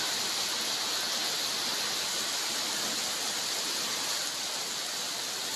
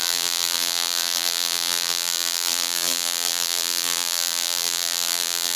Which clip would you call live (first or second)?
first